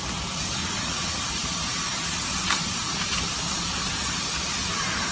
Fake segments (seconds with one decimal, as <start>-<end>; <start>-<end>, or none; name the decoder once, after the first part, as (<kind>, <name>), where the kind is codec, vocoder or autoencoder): 0.6-1.5 (vocoder, Vocos)